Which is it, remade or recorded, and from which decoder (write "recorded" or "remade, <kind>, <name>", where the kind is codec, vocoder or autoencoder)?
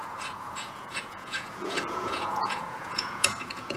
remade, vocoder, Vocos